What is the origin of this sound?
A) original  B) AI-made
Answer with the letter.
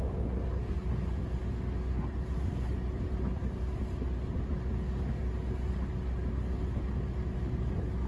A